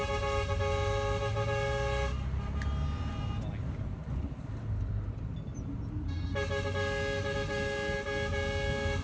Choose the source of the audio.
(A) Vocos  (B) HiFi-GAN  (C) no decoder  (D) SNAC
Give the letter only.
C